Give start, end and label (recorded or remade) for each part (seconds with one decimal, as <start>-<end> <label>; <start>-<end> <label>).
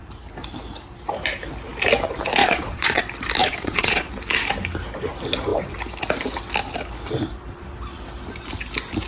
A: 0.0-2.4 recorded; 2.4-3.0 remade; 3.0-3.4 recorded; 3.4-4.1 remade; 4.1-9.1 recorded